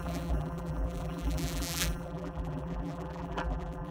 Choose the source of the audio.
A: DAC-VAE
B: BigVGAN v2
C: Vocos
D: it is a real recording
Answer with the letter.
B